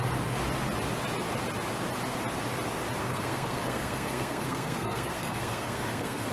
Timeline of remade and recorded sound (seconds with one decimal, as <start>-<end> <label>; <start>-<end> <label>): 0.0-3.0 recorded; 3.0-6.3 remade